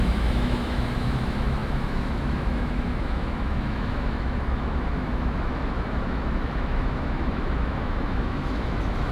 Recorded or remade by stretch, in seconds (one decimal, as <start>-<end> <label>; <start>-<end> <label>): 0.0-9.1 remade